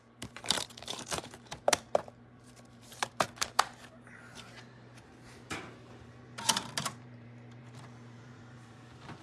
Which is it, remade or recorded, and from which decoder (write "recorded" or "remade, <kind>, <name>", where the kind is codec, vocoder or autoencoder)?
remade, vocoder, BigVGAN v2